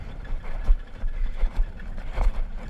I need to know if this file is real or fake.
fake